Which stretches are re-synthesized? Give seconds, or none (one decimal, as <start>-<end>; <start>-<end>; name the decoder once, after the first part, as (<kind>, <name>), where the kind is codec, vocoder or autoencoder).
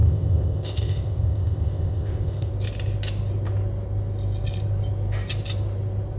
0.0-2.5 (codec, ZipCodec)